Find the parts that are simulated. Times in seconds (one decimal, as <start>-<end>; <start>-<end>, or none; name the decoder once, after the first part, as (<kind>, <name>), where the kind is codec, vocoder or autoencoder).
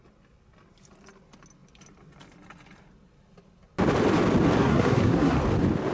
4.6-5.4 (codec, SNAC)